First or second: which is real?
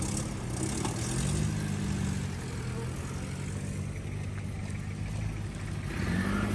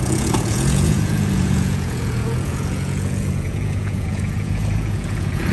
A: first